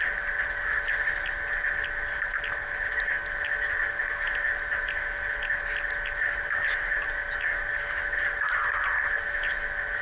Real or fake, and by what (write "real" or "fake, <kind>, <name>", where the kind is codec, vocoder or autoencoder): real